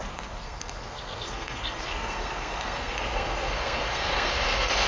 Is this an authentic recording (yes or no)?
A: no